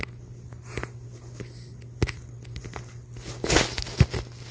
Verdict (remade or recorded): recorded